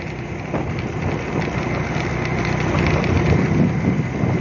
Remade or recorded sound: recorded